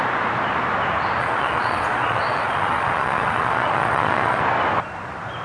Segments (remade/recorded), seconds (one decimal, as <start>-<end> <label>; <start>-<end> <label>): 0.0-1.2 recorded; 1.2-4.4 remade; 4.4-5.4 recorded